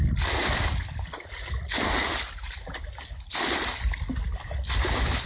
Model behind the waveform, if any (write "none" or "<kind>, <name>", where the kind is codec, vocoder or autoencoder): none